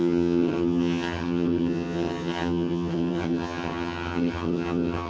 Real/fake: fake